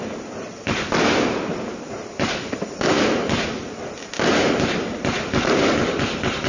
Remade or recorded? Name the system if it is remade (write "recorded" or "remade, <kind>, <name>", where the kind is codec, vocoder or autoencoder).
recorded